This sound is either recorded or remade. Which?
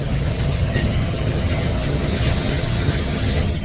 remade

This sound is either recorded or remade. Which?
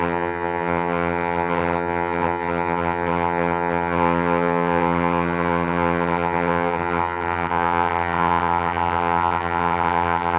remade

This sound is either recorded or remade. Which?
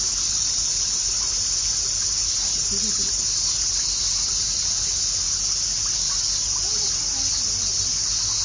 recorded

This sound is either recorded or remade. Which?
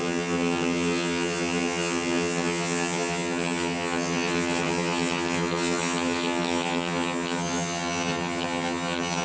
remade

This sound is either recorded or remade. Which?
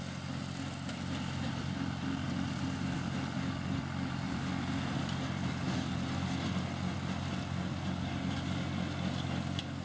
recorded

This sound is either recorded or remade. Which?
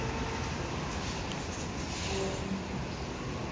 recorded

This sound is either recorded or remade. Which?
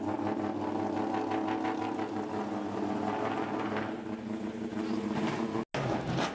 recorded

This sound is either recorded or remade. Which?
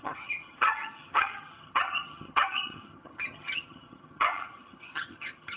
remade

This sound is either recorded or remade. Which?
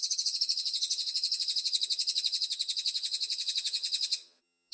remade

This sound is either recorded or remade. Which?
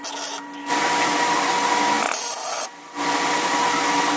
recorded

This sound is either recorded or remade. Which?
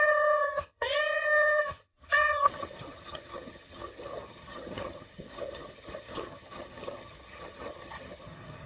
remade